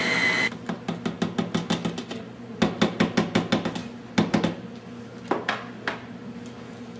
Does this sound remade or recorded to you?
recorded